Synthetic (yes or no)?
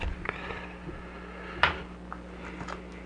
no